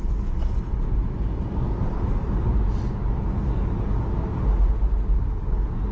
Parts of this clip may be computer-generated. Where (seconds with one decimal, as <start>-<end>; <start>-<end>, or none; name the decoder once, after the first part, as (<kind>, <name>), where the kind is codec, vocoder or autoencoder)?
none

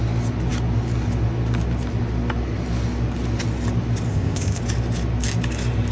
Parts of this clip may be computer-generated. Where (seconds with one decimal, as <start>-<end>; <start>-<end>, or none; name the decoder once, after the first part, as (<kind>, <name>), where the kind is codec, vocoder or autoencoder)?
4.1-4.6 (codec, ZipCodec)

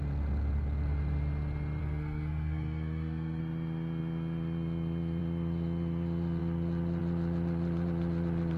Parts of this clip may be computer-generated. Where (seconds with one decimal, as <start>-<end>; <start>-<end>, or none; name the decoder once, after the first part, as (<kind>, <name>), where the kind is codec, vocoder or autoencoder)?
1.8-3.4 (codec, SNAC)